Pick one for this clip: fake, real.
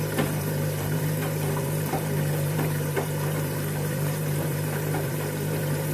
fake